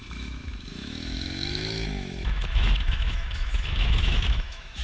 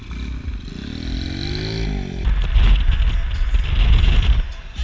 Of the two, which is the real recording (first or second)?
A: second